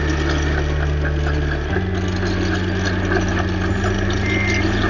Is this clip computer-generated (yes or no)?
no